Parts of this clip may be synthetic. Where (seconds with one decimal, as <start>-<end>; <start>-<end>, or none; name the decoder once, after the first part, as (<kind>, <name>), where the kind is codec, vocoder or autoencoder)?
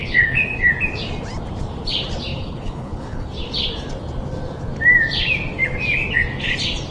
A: 0.0-0.7 (codec, HILCodec); 2.3-3.3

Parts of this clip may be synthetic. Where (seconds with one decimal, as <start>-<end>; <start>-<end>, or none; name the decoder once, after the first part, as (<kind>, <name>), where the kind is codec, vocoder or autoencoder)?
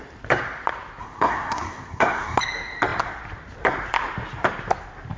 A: 1.0-2.4 (codec, SNAC)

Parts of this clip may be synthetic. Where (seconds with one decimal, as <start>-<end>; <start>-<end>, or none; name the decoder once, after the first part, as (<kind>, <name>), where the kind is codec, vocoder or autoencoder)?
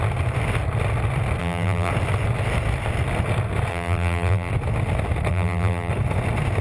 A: 1.4-1.9 (vocoder, BigVGAN v2); 3.7-4.5; 5.3-5.9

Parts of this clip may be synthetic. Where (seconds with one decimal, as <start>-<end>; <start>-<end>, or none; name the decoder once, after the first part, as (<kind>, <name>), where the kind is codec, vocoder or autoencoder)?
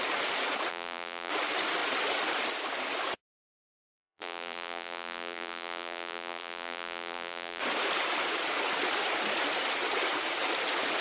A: 0.7-1.3 (vocoder, BigVGAN v2); 3.5-7.6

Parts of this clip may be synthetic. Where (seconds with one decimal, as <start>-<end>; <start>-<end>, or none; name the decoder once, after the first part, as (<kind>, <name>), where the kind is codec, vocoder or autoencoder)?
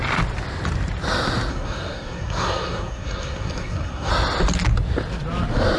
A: 1.5-4.1 (codec, SNAC)